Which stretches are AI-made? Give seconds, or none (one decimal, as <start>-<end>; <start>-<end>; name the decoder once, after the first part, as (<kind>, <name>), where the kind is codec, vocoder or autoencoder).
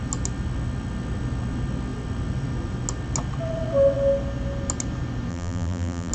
5.3-6.1 (vocoder, BigVGAN v2)